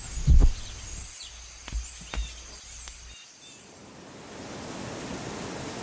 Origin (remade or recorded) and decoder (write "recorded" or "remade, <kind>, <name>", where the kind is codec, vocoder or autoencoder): recorded